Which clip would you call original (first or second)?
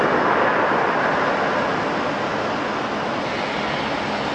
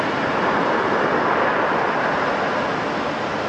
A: first